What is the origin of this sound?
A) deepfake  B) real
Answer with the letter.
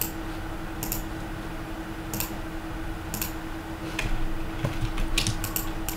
B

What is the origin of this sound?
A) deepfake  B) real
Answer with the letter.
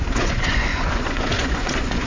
A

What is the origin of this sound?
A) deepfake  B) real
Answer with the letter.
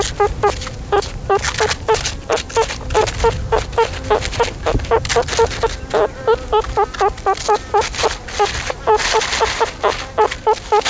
B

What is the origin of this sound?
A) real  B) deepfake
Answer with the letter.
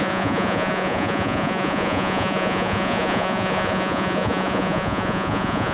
B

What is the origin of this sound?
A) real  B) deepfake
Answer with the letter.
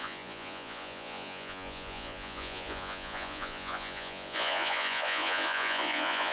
B